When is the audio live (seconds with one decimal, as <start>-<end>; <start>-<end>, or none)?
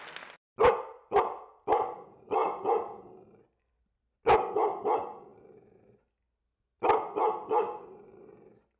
0.0-8.8